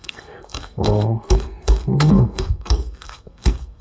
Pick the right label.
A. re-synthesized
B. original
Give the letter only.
A